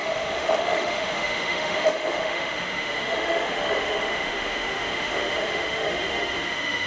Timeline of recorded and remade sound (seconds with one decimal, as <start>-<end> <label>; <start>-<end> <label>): 0.0-6.9 remade